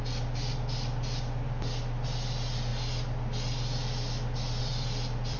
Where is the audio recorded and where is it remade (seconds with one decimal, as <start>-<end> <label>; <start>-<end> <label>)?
0.0-5.4 recorded